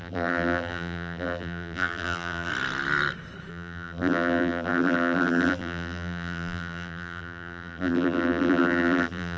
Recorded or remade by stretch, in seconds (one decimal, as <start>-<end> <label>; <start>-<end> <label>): 0.0-2.5 remade; 2.5-3.5 recorded; 3.5-9.4 remade